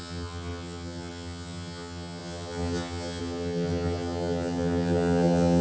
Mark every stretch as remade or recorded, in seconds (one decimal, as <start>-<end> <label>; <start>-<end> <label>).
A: 0.0-5.6 remade